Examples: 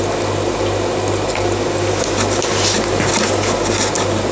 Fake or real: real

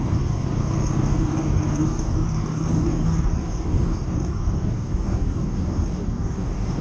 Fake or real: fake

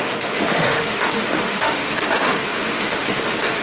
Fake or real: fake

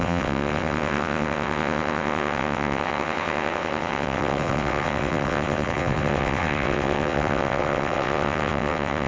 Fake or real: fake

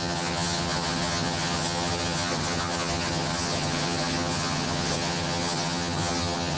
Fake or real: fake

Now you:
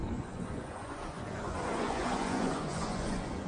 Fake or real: fake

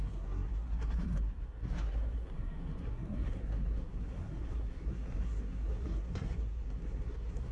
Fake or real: fake